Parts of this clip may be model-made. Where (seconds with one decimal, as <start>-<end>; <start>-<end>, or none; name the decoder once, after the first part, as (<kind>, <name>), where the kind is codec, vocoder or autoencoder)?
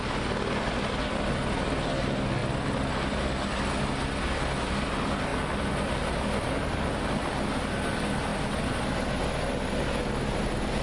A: none